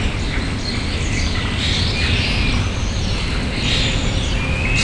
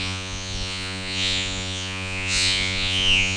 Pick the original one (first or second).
first